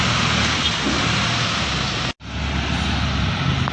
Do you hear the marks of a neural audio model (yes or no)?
no